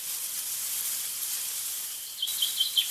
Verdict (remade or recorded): remade